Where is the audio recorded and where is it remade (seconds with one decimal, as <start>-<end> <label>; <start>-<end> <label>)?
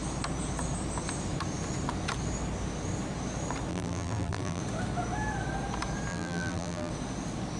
0.0-3.7 recorded; 3.7-4.6 remade; 4.6-6.1 recorded; 6.1-6.9 remade; 6.9-7.6 recorded